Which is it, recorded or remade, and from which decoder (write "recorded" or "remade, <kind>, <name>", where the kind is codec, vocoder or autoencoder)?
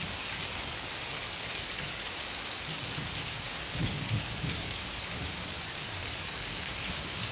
remade, codec, DAC